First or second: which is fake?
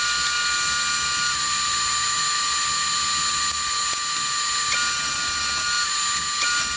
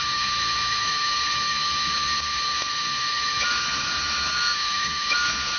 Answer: second